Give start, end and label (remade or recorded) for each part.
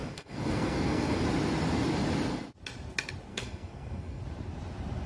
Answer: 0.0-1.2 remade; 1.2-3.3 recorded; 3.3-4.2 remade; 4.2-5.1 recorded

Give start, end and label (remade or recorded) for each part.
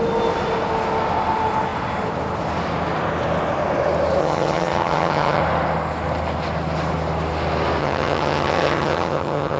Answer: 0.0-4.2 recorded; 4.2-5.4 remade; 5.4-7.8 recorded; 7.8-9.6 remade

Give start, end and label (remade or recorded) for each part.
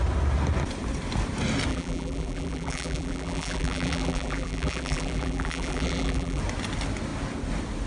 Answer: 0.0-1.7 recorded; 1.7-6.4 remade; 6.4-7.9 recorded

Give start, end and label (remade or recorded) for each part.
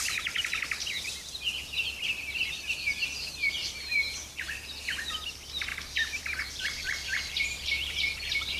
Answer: 0.0-3.6 recorded; 3.6-4.8 remade; 4.8-5.7 recorded; 5.7-8.6 remade